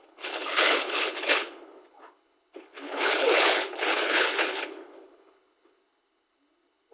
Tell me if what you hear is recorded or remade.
remade